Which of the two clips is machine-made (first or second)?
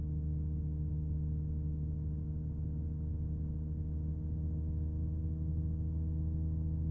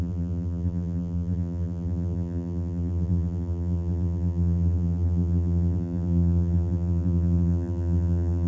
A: second